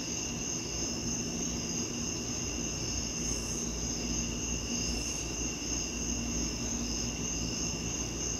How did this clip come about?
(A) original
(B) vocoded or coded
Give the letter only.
A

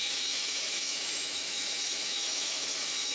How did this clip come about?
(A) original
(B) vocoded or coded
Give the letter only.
B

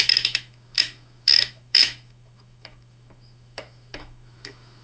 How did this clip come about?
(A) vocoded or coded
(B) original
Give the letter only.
A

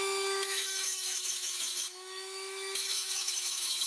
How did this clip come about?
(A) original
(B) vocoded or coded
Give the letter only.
B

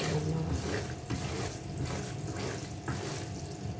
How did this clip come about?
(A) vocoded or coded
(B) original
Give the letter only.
B